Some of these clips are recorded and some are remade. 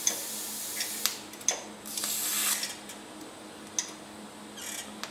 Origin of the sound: recorded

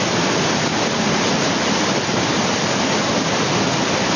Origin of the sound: recorded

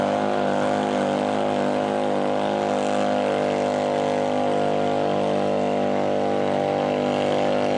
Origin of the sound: recorded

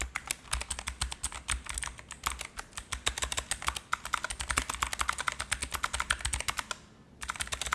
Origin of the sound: recorded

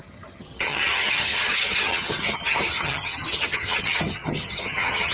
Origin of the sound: remade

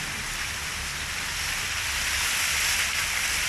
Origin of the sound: recorded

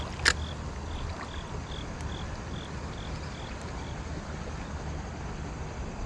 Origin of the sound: recorded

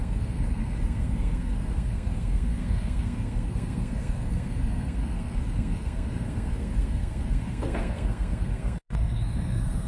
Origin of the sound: remade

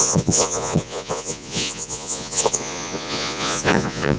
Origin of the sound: remade